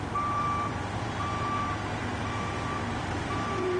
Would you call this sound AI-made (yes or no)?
yes